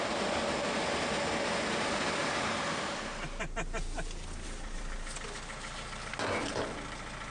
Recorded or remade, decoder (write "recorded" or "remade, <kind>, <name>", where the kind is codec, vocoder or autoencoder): recorded